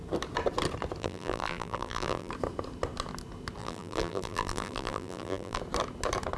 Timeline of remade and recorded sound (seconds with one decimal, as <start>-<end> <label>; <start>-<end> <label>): 0.0-1.0 recorded; 1.0-2.3 remade; 2.3-3.6 recorded; 3.6-5.6 remade; 5.6-6.4 recorded